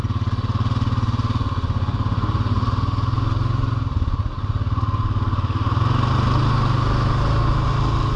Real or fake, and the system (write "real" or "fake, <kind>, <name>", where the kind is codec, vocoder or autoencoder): real